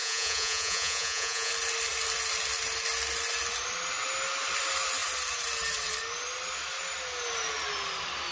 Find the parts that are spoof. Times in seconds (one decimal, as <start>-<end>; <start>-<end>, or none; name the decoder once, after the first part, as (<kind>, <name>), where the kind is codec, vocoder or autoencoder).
0.0-1.5 (vocoder, Vocos)